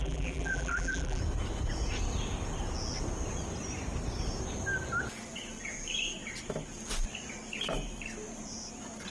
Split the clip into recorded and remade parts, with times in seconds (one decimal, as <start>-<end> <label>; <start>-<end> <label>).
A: 0.0-1.2 remade; 1.2-9.1 recorded